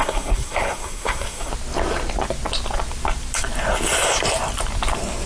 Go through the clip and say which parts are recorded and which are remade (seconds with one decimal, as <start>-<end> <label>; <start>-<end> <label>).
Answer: 0.0-1.5 remade; 1.5-5.3 recorded